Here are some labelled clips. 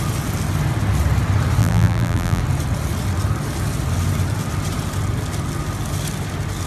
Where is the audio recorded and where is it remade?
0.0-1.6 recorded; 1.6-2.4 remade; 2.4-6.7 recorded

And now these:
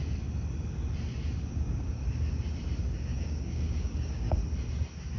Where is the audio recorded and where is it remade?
0.0-1.4 recorded; 1.4-2.0 remade; 2.0-2.8 recorded; 2.8-4.4 remade; 4.4-5.2 recorded

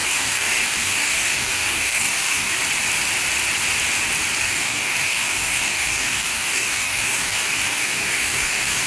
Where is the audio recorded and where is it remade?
0.0-2.6 remade; 2.6-4.4 recorded; 4.4-8.9 remade

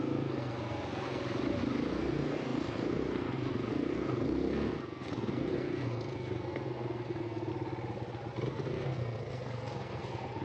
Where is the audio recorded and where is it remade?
0.0-1.2 remade; 1.2-1.9 recorded; 1.9-7.5 remade; 7.5-8.5 recorded; 8.5-10.4 remade

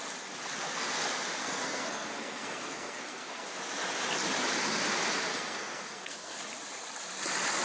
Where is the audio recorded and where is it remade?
0.0-1.4 recorded; 1.4-3.6 remade; 3.6-5.3 recorded; 5.3-6.4 remade; 6.4-7.6 recorded